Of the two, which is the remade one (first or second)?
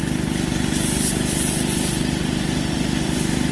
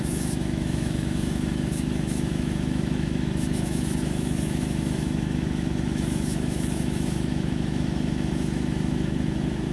second